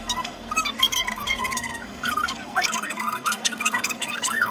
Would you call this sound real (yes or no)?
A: no